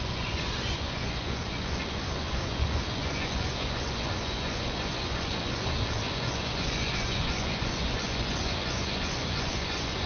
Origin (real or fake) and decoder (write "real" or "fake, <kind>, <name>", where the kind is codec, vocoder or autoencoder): fake, vocoder, Vocos